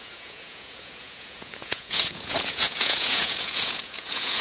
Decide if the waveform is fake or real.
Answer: fake